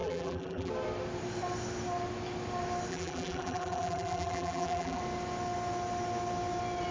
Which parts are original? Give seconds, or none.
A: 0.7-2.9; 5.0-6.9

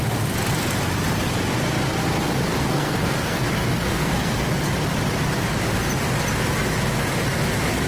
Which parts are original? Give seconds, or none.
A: 0.0-2.6; 3.4-3.9; 4.5-7.9

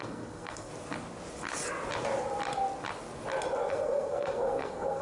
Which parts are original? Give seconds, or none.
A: 0.7-3.7

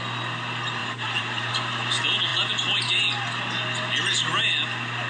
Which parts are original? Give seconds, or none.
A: 0.0-0.8; 1.5-5.1

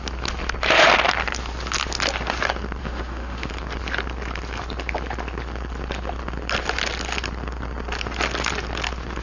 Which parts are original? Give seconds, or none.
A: 0.0-2.8; 3.5-9.2